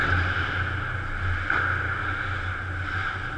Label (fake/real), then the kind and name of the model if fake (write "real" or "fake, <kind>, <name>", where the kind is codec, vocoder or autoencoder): real